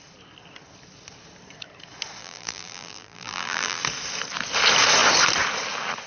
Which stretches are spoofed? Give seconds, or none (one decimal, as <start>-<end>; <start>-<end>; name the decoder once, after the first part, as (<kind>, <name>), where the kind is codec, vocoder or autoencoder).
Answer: 2.2-3.8 (vocoder, BigVGAN v2)